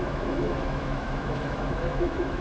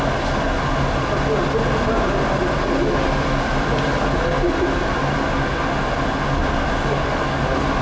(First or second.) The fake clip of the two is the first